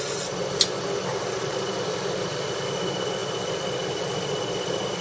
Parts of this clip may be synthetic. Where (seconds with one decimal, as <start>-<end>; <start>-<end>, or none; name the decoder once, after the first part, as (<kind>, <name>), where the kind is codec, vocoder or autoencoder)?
none